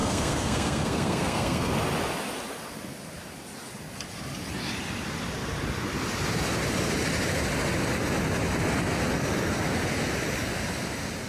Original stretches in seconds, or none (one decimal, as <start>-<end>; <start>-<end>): 1.7-11.3